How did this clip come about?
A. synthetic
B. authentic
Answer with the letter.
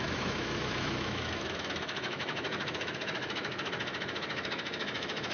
A